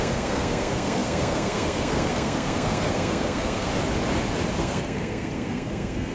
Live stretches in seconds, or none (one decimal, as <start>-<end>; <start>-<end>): 3.7-4.6

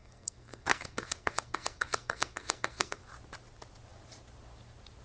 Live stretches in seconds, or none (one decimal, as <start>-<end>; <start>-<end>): 3.0-5.0

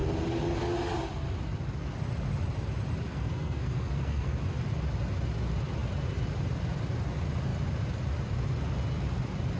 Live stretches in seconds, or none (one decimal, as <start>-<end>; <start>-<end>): 0.0-3.1; 4.4-9.6

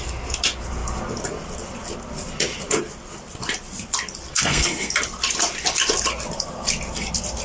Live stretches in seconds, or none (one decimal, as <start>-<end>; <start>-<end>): 0.0-4.3; 4.9-7.4

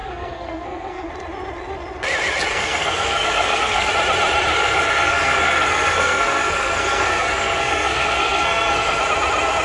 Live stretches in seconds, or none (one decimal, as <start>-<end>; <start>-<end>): 1.1-2.5; 3.9-4.5; 9.0-9.6

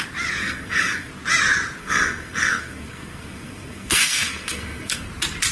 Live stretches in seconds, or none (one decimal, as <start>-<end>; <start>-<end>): 0.0-0.4; 1.1-1.8; 5.1-5.5

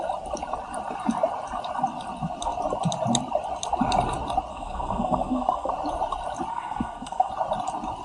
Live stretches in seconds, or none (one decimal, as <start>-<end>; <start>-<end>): 0.0-4.5; 5.7-6.5; 7.3-8.0